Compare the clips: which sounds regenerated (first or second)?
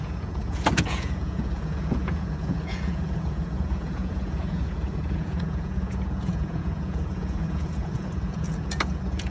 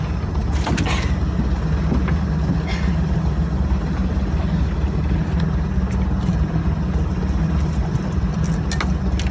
first